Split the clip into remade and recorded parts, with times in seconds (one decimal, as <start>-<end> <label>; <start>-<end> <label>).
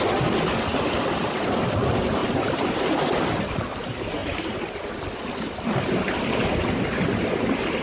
0.0-4.2 recorded; 4.2-7.1 remade; 7.1-7.8 recorded